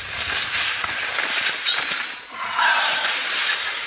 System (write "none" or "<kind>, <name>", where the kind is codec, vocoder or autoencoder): vocoder, BigVGAN v2